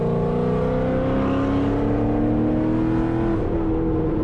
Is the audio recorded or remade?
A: recorded